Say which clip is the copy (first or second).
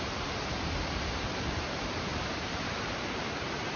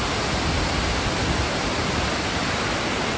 first